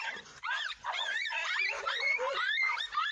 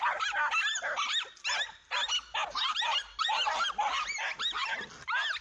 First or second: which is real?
second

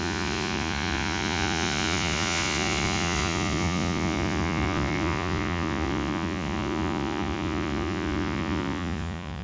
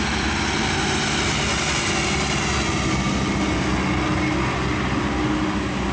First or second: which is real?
second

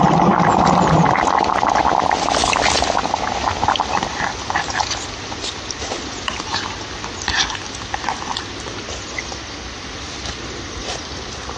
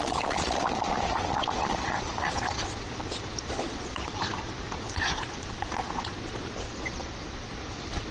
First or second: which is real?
first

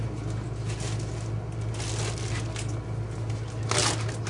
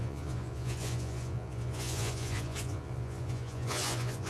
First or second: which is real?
first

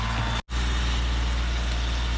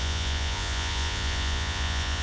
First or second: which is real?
first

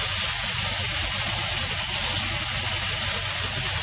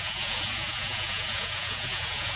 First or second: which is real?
first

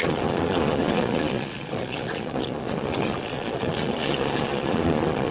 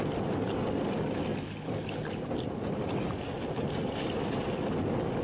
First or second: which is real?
second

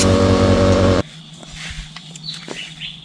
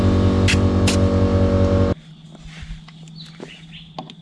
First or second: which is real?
second